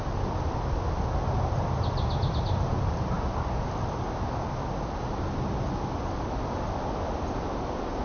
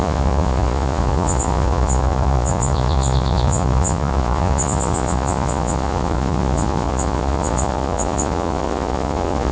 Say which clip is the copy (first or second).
second